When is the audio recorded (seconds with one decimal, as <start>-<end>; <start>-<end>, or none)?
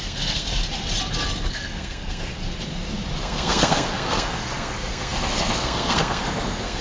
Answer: 0.6-1.5; 2.3-3.2